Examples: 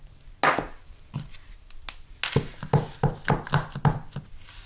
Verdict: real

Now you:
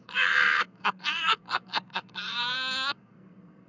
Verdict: fake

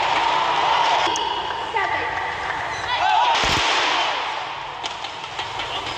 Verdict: real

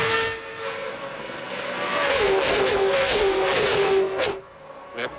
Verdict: fake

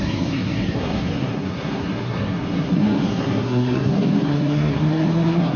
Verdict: fake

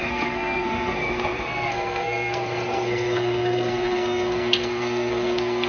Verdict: fake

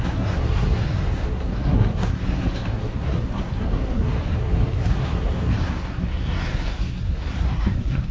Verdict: fake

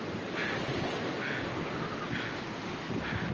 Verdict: real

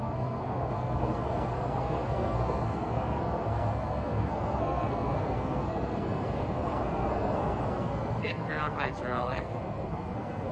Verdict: fake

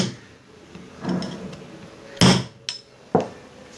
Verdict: real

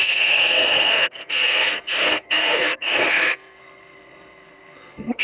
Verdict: fake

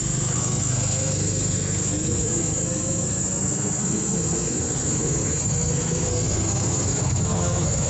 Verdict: fake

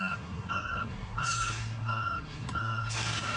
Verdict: fake